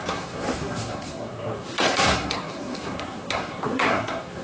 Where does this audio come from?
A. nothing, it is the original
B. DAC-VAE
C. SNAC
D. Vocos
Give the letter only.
C